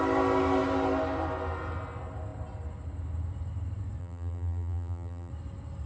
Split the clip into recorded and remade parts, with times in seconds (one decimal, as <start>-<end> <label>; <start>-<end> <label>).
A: 0.0-4.0 recorded; 4.0-5.3 remade; 5.3-5.9 recorded